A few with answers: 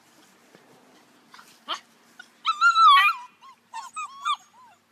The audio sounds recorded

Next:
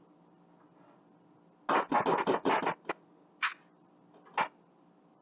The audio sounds recorded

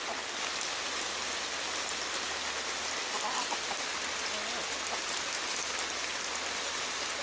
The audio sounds recorded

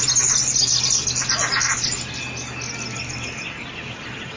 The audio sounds recorded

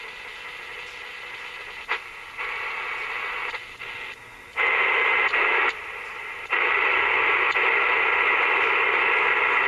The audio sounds recorded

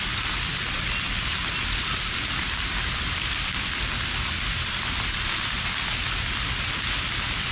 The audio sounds recorded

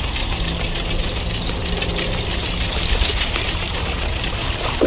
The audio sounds recorded